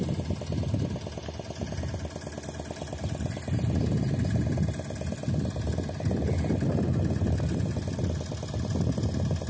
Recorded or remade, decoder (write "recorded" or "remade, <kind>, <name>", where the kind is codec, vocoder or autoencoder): recorded